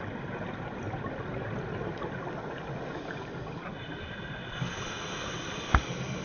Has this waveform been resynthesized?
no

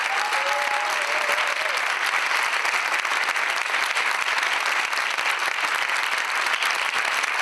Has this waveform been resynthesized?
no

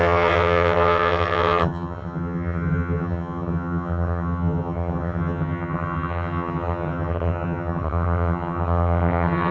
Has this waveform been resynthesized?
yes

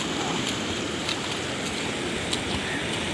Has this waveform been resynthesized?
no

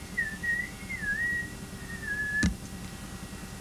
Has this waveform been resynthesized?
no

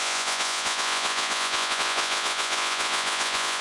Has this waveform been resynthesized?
yes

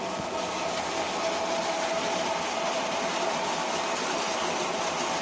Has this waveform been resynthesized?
no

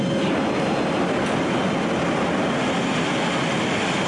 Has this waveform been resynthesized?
no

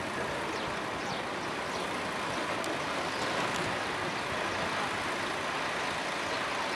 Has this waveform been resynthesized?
no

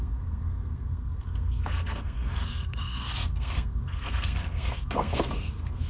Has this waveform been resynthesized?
yes